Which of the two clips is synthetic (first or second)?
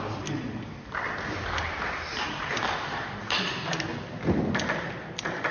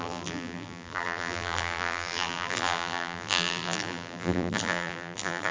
second